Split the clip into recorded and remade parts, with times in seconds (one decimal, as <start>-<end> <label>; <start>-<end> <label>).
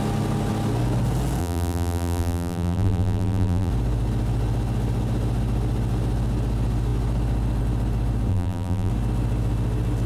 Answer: 0.0-1.4 recorded; 1.4-3.7 remade; 3.7-8.3 recorded; 8.3-8.9 remade; 8.9-10.1 recorded